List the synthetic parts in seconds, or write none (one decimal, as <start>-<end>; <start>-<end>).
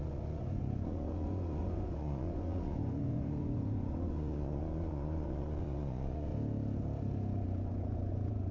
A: 0.0-6.3; 7.6-8.5